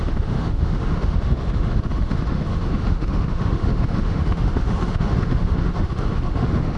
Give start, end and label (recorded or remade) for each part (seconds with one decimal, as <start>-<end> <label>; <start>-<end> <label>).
0.0-6.8 remade